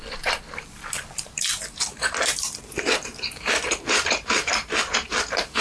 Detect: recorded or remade remade